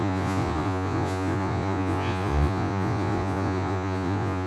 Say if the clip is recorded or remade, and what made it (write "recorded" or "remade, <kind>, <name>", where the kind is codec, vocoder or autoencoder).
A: remade, vocoder, Vocos